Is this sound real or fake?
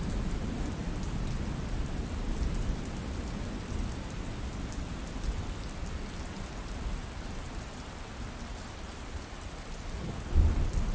real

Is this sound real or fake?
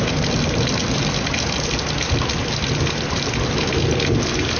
real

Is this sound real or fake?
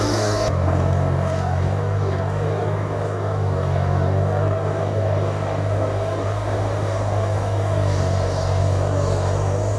fake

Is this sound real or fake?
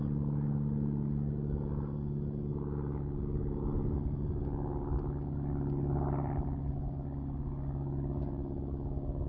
real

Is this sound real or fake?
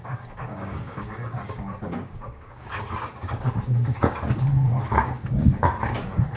fake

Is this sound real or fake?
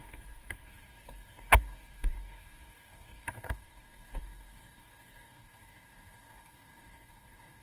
fake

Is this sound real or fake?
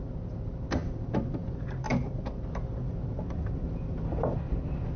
real